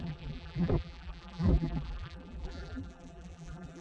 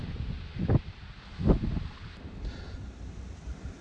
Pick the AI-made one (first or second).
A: first